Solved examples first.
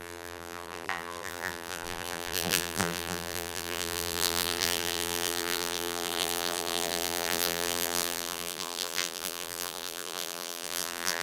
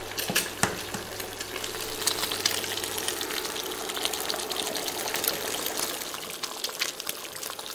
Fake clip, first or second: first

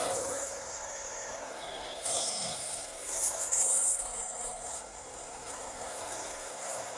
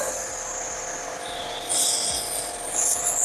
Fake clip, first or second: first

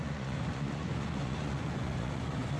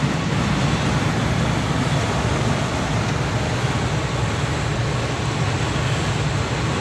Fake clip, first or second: first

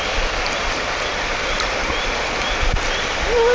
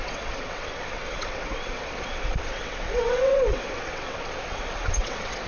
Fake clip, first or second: second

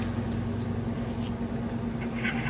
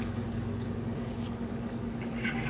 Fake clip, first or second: second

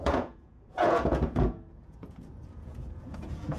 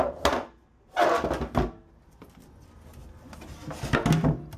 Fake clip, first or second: first